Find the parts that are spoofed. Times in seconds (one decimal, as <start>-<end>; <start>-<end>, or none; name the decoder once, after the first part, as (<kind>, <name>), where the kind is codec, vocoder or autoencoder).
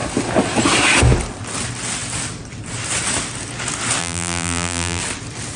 4.0-5.0 (vocoder, BigVGAN v2)